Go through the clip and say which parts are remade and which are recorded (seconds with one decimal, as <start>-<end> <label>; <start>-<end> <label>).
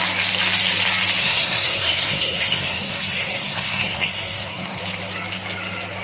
0.0-1.2 recorded; 1.2-4.8 remade; 4.8-6.0 recorded